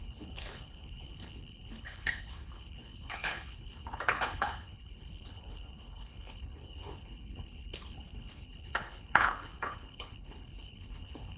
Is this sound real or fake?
fake